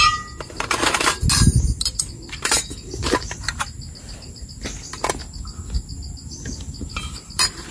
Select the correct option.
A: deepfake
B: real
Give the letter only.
B